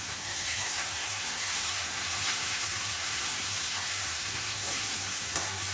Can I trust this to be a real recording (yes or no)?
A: no